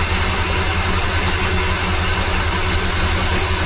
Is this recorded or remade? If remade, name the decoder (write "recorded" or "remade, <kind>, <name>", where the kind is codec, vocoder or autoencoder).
recorded